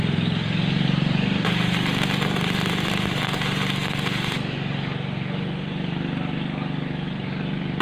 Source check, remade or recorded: remade